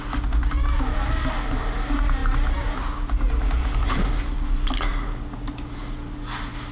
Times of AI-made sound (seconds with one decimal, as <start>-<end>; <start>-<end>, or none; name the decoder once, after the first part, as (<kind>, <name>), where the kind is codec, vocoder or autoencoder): none